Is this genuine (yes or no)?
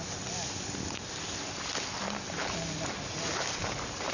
yes